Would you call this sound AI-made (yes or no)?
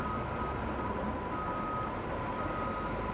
no